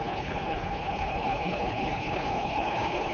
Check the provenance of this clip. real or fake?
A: fake